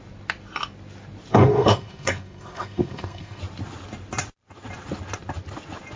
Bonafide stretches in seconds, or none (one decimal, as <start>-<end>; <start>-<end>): 0.0-1.3; 3.4-6.0